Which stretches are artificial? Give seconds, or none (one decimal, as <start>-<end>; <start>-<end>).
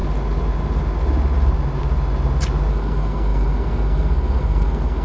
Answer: 2.7-5.0